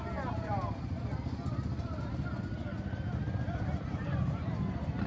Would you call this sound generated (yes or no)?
no